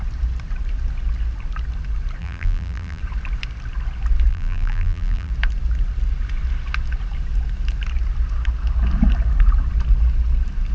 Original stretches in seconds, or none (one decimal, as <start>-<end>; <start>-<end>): 0.0-2.2; 3.0-4.3; 5.3-10.7